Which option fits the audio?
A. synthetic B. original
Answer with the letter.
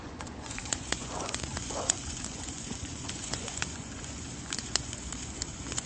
A